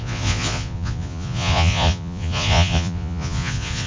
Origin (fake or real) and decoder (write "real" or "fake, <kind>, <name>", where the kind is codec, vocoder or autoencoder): fake, vocoder, Vocos